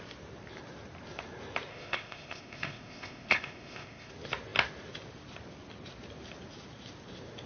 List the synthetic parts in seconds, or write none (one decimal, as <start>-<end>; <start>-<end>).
1.7-4.1